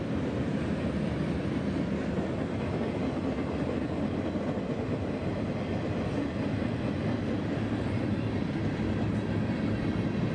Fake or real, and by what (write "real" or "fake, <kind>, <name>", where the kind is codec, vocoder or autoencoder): real